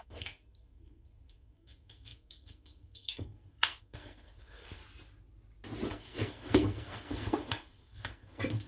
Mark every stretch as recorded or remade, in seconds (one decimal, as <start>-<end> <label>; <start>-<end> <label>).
0.0-4.8 remade; 4.8-5.9 recorded; 5.9-8.7 remade